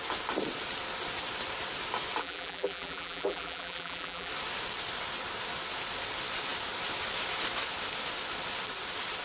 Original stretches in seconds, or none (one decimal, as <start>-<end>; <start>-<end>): 0.0-2.2; 4.3-9.2